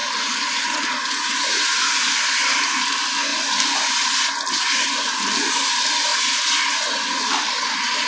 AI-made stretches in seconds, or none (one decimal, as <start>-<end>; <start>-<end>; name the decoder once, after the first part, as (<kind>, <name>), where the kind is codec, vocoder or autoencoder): 0.0-1.9 (vocoder, Vocos)

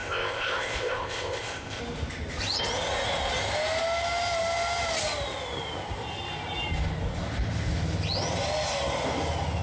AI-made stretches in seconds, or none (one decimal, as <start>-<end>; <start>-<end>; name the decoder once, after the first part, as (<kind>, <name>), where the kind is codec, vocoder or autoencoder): 0.0-1.8 (codec, ZipCodec)

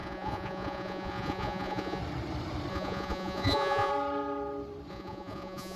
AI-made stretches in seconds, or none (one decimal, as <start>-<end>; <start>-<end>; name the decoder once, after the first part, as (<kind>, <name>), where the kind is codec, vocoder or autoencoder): 0.0-2.0 (vocoder, Vocos); 2.7-3.9; 4.9-5.8